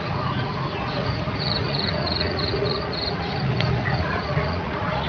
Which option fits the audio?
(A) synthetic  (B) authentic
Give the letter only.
A